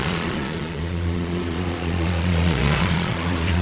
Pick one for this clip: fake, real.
fake